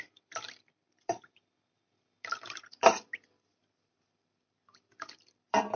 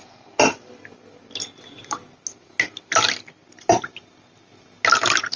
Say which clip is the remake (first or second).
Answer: first